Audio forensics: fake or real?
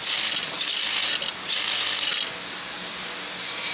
real